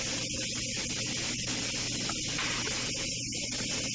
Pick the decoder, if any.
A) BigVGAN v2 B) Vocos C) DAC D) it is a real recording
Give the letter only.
D